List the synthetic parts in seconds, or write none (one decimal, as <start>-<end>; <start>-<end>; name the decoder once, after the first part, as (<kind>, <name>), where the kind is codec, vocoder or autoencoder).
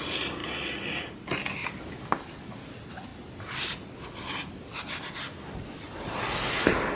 none